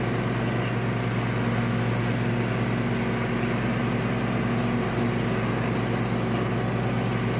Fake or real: real